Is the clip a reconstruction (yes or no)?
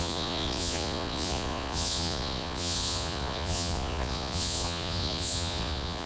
yes